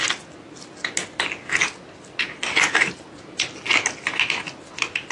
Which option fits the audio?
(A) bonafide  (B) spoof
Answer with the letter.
A